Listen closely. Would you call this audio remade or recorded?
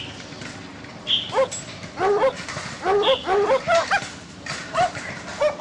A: recorded